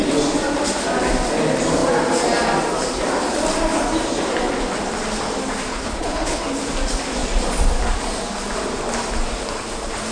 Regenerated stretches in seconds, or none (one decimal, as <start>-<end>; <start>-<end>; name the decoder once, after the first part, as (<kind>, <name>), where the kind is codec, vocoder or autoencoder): 5.7-6.4 (codec, HILCodec)